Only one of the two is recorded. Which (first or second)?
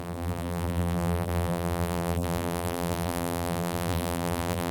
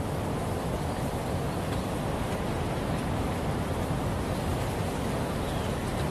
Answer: second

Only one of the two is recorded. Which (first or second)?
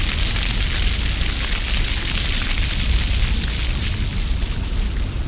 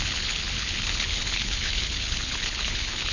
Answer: first